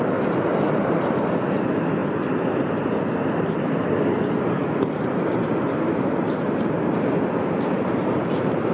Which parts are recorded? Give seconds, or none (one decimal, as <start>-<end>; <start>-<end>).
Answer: 0.0-8.7